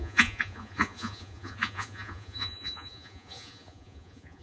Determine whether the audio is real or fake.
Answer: fake